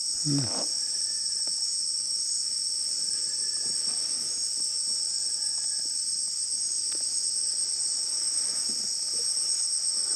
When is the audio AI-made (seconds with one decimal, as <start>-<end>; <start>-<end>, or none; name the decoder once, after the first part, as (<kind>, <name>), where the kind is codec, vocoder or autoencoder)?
none